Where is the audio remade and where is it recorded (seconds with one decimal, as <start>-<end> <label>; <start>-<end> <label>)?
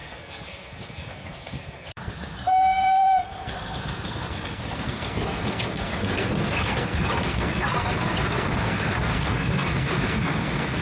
0.0-10.8 remade